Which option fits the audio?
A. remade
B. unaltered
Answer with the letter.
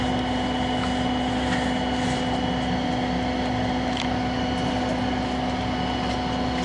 B